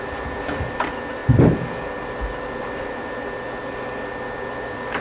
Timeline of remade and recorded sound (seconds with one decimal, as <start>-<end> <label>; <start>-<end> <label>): 0.0-5.0 recorded